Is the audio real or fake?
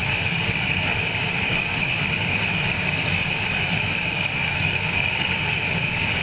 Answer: fake